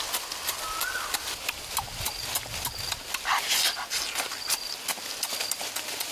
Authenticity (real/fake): real